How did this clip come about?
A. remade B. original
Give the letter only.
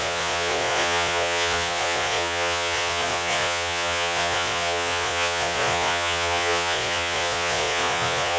A